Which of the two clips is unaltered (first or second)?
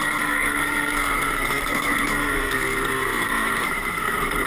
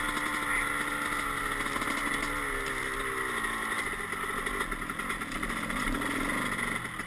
second